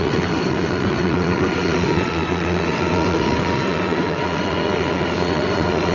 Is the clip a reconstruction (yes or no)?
yes